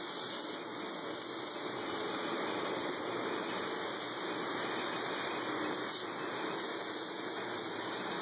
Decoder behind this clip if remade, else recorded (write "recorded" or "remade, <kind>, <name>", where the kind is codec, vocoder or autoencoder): recorded